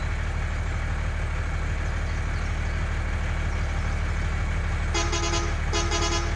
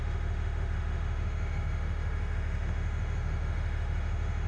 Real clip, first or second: first